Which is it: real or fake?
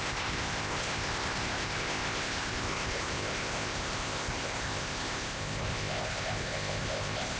fake